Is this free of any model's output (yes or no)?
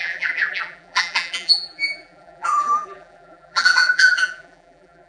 no